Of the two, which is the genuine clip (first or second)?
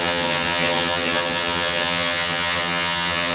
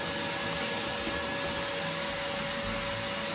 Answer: second